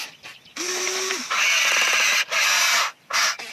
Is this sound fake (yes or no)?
no